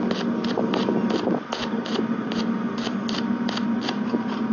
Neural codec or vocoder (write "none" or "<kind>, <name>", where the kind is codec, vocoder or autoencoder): none